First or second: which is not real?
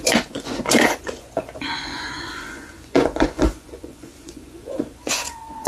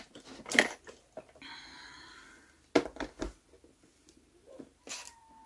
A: first